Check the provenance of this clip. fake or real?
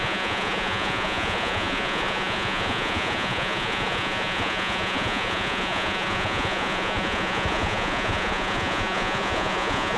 fake